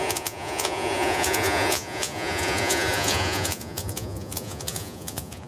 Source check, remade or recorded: remade